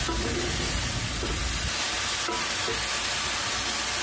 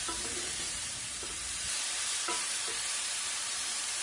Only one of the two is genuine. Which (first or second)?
first